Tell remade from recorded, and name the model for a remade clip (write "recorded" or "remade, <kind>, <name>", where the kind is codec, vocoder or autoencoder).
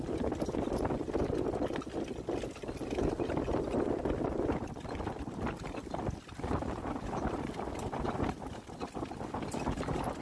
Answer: recorded